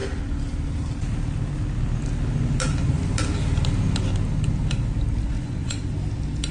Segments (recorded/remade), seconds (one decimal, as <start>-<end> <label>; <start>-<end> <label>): 0.0-5.3 recorded; 5.3-5.8 remade; 5.8-6.5 recorded